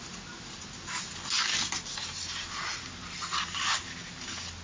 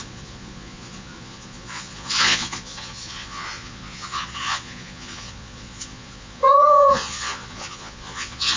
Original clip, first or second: first